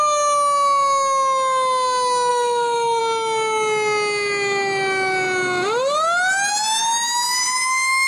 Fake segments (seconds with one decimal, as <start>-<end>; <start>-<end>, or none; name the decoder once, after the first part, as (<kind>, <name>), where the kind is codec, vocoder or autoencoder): 2.3-3.0 (autoencoder, DAC-VAE)